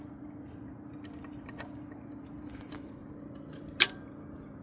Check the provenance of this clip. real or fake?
real